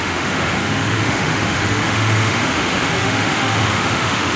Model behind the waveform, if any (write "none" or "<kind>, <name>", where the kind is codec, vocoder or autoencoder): autoencoder, DAC-VAE